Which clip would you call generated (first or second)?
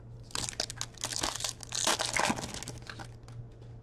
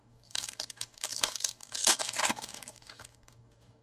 second